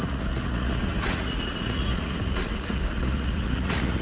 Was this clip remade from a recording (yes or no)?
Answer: yes